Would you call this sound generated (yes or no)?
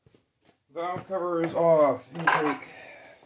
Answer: no